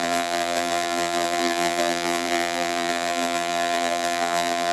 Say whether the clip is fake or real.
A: fake